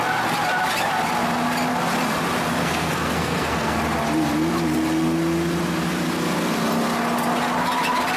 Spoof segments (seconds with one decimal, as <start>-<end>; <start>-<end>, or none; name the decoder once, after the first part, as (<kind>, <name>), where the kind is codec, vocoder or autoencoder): 2.6-3.8 (codec, SNAC)